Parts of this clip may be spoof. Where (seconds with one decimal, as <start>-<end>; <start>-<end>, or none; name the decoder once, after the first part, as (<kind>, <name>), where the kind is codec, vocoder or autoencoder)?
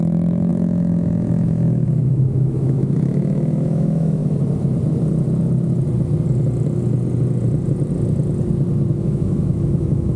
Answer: 0.0-4.2 (autoencoder, DAC-VAE); 8.9-10.2